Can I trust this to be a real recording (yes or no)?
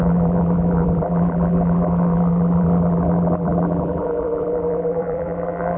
no